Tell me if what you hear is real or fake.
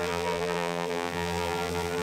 fake